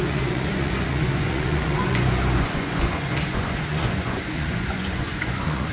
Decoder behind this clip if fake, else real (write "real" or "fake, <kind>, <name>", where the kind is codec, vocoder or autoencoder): fake, vocoder, Vocos